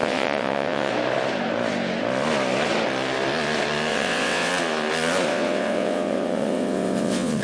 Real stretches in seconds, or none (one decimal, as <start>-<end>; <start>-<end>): 0.9-3.9; 4.5-5.3